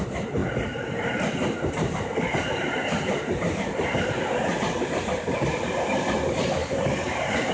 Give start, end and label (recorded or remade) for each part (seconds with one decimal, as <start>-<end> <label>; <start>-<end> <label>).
0.0-0.4 recorded; 0.4-4.6 remade; 4.6-6.6 recorded; 6.6-7.5 remade